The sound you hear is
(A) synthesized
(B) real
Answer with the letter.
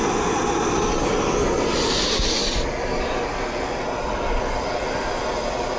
B